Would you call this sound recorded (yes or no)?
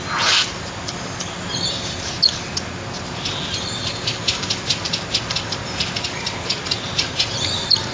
yes